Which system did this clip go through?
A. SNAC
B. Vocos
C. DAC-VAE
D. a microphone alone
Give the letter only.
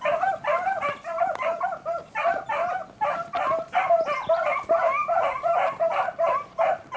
D